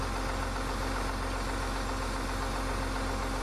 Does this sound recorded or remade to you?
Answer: recorded